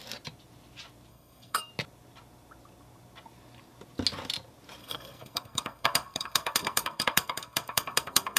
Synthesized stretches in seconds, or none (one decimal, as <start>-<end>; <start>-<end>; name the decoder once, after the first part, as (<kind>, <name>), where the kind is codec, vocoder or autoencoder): 1.1-1.7 (codec, SNAC); 4.8-8.4